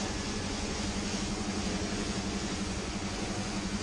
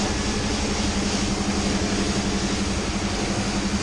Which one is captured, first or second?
second